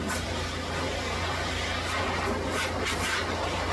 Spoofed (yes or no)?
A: no